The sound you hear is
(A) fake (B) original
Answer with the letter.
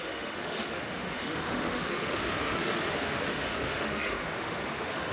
A